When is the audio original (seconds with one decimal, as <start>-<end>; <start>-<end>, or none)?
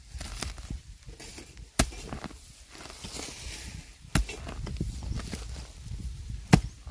0.0-6.9